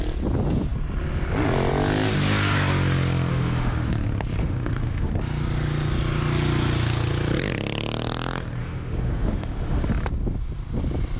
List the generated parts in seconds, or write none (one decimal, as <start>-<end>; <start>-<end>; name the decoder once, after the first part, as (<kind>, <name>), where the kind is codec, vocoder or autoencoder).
3.3-3.9 (autoencoder, DAC-VAE); 4.4-5.1; 8.6-9.9